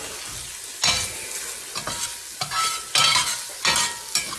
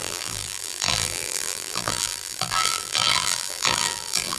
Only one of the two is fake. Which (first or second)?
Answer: second